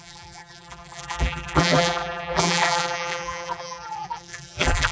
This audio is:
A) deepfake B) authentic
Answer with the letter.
A